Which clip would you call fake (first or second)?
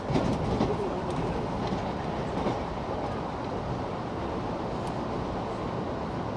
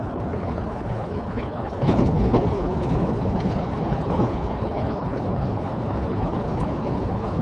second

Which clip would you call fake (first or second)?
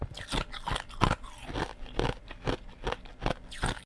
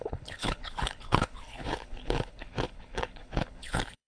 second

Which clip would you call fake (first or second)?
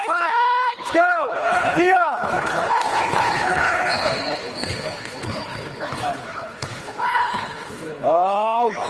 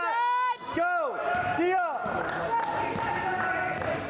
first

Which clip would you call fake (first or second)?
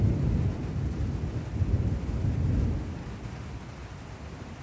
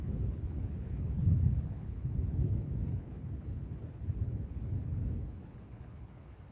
second